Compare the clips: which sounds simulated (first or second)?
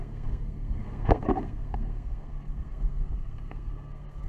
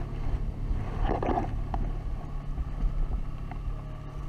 first